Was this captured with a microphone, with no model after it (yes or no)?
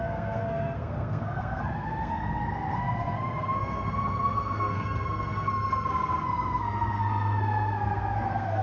no